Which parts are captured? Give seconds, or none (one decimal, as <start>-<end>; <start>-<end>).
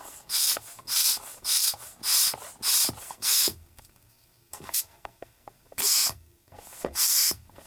2.0-3.0